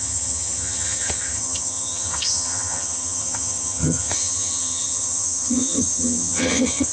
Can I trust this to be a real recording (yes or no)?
no